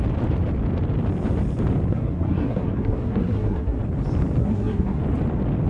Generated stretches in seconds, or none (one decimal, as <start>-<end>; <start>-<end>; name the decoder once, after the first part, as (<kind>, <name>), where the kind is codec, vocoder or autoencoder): 1.9-3.8 (codec, SNAC); 4.4-5.0